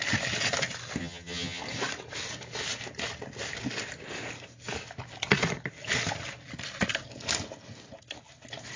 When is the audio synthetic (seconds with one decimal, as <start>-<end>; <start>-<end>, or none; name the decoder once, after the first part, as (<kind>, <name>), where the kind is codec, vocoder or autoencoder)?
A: 1.0-1.6 (vocoder, HiFi-GAN)

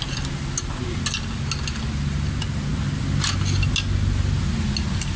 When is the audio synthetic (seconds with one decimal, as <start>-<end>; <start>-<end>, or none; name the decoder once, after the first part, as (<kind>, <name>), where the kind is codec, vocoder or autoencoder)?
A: none

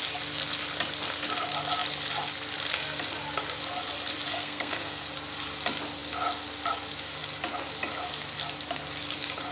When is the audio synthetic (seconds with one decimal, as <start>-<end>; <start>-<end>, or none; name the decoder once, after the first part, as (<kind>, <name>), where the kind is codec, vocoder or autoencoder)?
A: 4.3-5.1 (codec, SNAC)